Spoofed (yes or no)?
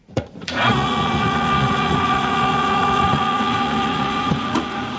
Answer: yes